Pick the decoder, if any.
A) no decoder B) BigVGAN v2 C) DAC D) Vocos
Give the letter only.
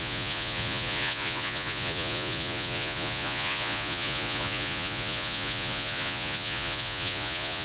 D